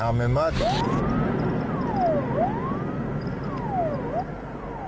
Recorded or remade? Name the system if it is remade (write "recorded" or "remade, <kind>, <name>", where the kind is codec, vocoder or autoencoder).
recorded